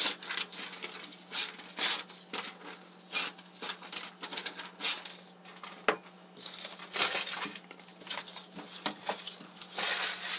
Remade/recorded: recorded